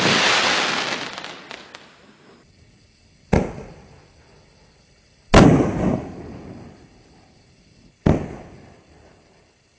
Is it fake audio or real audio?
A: real